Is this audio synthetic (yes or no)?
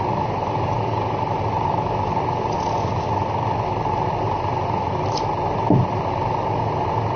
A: no